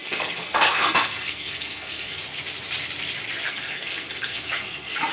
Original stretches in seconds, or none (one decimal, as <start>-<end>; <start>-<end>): 2.2-3.5